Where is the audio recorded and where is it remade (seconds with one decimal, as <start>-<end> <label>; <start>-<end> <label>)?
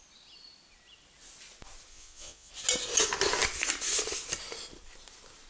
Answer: 0.0-1.9 recorded; 1.9-2.5 remade; 2.5-5.5 recorded